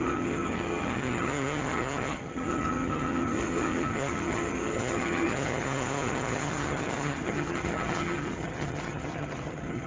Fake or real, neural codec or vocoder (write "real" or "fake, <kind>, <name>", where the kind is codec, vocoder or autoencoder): fake, vocoder, HiFi-GAN